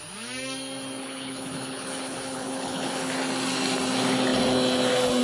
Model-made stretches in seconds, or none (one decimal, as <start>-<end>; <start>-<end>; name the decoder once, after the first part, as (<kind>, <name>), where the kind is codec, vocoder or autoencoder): 1.0-3.1 (codec, HILCodec)